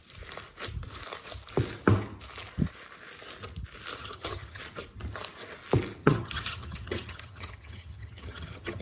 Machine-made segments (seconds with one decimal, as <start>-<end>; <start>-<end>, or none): 4.0-4.6; 6.0-8.8